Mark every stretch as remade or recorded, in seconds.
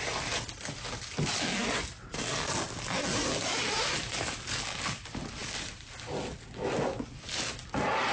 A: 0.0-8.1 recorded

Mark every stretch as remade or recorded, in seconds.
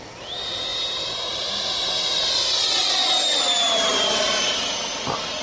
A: 0.0-5.4 recorded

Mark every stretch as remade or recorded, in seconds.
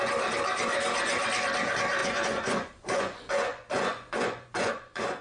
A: 0.0-2.0 recorded; 2.0-5.2 remade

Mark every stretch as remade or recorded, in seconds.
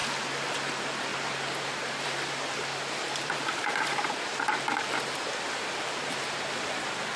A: 0.0-1.1 recorded; 1.1-5.0 remade; 5.0-7.2 recorded